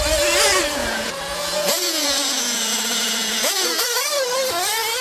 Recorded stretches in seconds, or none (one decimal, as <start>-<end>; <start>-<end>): 0.0-0.8; 3.8-5.0